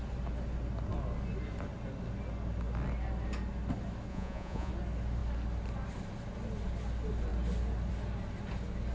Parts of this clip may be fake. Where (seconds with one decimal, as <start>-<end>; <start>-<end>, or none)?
4.1-4.7